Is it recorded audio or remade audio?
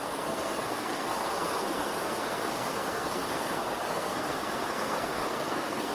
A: remade